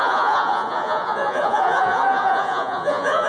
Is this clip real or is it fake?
fake